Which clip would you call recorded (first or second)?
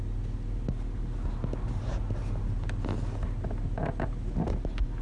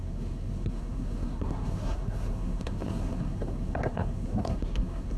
first